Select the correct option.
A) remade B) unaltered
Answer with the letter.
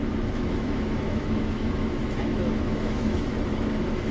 A